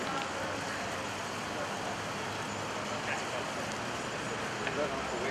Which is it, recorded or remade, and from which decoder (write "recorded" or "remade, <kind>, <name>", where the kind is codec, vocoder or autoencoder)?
recorded